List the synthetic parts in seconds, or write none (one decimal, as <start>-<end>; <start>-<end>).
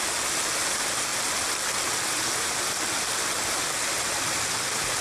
none